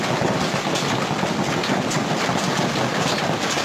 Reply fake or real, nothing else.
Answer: real